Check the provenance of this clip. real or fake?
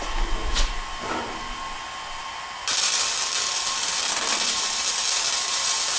real